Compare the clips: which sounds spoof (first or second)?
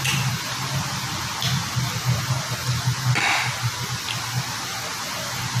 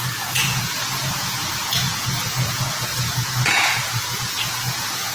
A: second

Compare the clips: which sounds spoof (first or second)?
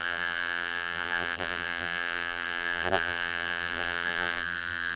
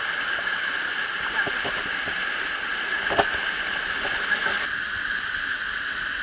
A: first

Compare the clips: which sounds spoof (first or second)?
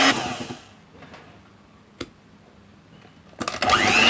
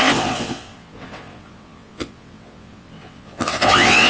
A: second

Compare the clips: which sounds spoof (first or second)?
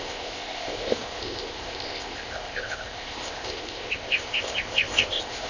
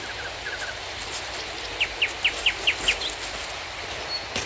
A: first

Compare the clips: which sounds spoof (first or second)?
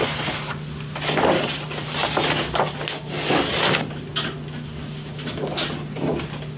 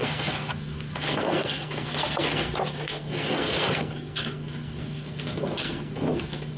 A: second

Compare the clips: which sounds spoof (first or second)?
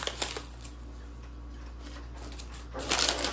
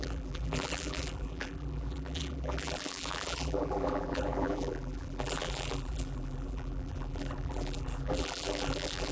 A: second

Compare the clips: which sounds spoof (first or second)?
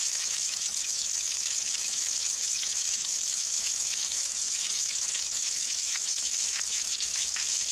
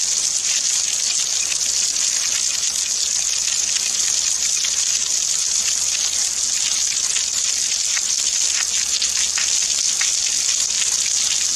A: first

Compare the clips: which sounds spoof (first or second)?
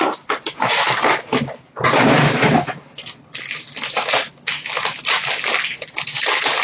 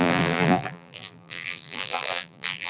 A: second